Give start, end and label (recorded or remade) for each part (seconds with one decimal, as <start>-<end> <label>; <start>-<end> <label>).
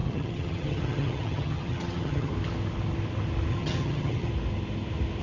0.0-2.3 remade; 2.3-3.5 recorded; 3.5-4.3 remade; 4.3-5.2 recorded